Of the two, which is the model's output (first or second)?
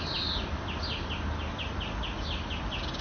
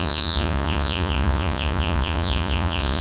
second